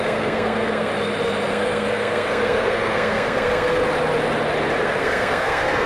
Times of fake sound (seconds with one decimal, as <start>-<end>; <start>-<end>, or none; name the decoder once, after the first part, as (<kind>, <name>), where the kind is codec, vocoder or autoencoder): 0.0-0.9 (codec, SNAC); 1.5-3.8; 4.8-5.9